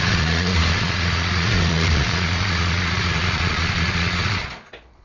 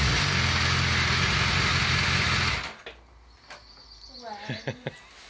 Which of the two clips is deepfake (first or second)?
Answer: first